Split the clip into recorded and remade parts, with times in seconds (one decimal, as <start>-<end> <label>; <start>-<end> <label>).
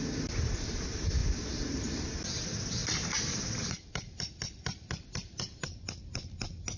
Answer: 0.0-1.2 recorded; 1.2-2.2 remade; 2.2-2.8 recorded; 2.8-4.3 remade; 4.3-6.8 recorded